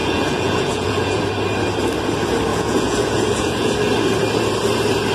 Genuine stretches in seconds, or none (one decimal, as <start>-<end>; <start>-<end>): 1.2-2.5; 3.7-5.1